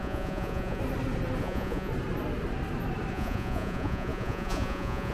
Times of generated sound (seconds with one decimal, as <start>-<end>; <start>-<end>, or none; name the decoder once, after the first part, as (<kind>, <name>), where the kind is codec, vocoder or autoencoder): 0.0-0.8 (vocoder, Vocos); 1.4-1.9; 3.1-5.1